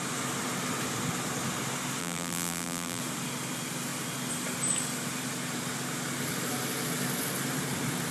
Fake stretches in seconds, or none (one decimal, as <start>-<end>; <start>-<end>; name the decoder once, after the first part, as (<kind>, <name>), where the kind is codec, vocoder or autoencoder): 2.0-3.0 (vocoder, BigVGAN v2)